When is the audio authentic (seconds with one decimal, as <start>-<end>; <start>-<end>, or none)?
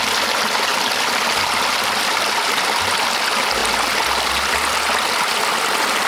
0.0-0.7; 2.8-6.1